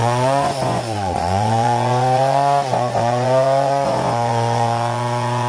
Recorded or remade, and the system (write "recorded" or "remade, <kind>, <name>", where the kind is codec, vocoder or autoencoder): remade, vocoder, Vocos